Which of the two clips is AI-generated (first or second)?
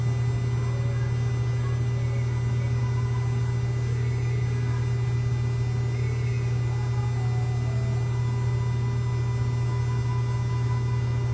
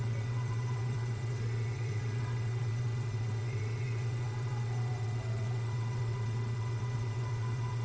second